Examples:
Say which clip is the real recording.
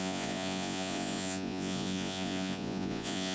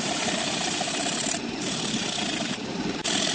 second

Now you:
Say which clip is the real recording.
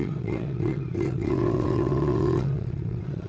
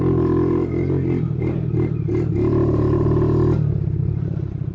second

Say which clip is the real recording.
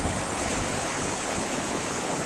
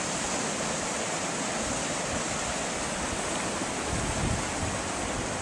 second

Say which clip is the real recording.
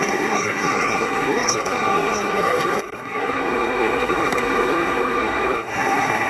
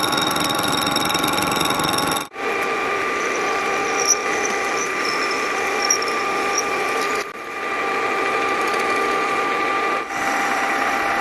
second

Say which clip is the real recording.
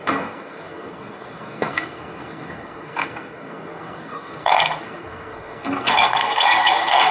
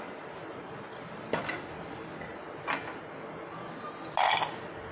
second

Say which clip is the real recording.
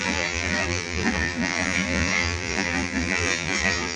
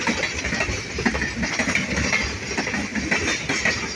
second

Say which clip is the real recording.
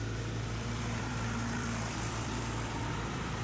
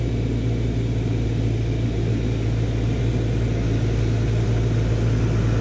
second